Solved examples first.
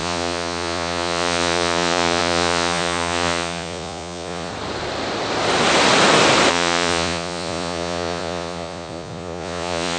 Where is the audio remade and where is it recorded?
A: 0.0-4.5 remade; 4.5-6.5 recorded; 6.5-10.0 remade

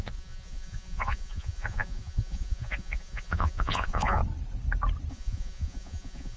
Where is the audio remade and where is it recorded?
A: 0.0-4.2 remade; 4.2-5.1 recorded; 5.1-6.4 remade

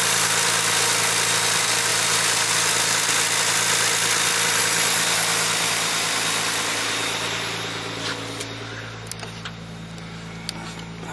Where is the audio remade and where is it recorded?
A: 0.0-11.1 recorded

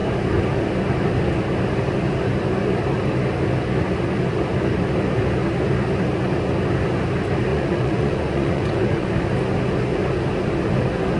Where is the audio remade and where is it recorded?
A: 0.0-7.5 recorded; 7.5-9.1 remade; 9.1-11.2 recorded

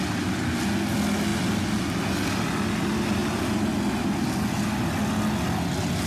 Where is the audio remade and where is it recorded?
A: 0.0-6.1 recorded

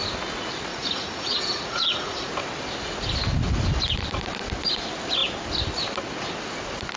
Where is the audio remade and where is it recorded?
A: 0.0-0.7 recorded; 0.7-2.3 remade; 2.3-7.0 recorded

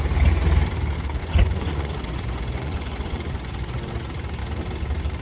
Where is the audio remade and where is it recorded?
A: 0.0-1.2 recorded; 1.2-3.9 remade; 3.9-5.2 recorded

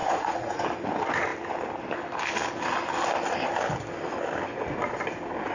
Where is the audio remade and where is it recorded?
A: 0.0-0.6 remade; 0.6-4.5 recorded; 4.5-5.0 remade; 5.0-5.5 recorded